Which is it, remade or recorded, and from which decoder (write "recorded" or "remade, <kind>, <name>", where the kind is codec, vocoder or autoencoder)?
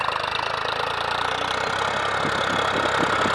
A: recorded